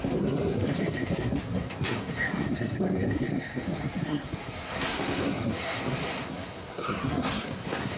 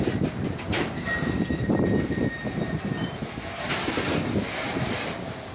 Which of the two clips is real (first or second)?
second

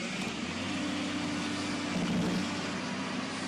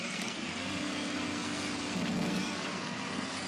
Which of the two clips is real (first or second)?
first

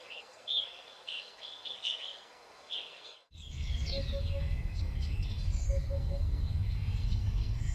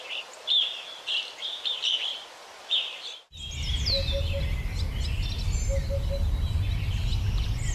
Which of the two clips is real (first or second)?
second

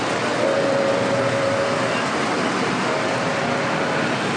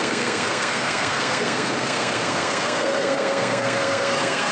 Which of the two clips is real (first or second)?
first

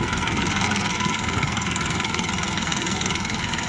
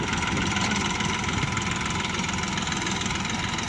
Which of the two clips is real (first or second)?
second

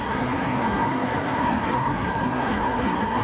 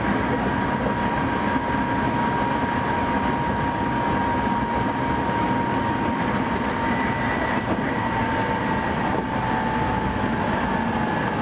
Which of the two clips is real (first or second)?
second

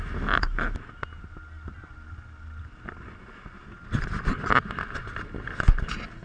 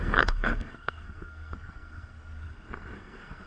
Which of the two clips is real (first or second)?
first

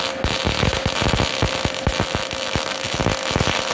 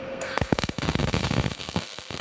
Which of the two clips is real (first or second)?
first